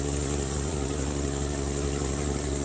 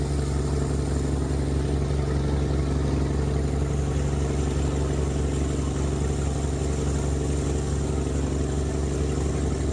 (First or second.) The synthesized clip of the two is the first